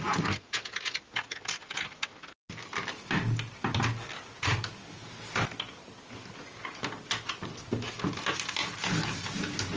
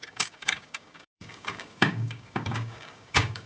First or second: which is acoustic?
first